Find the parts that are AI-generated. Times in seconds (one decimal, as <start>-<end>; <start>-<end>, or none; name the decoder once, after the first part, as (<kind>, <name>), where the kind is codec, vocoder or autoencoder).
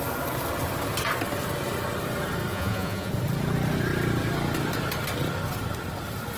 2.5-3.1 (vocoder, Vocos)